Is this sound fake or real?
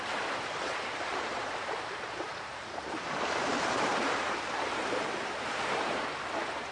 fake